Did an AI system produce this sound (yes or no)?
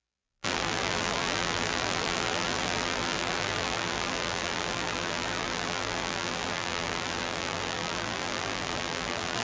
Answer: yes